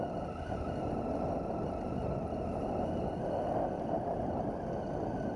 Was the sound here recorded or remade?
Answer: recorded